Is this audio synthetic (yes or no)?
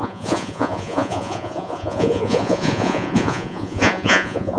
yes